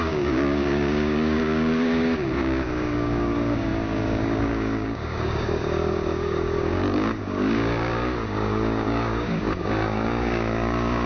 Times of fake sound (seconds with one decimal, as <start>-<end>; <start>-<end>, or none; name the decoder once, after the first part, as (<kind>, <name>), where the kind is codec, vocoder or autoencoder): 0.0-11.1 (codec, DAC)